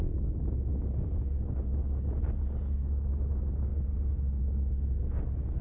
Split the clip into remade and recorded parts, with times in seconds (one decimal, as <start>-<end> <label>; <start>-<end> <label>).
0.0-5.6 recorded